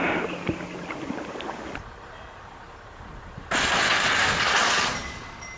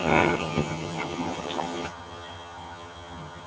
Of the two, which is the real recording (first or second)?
first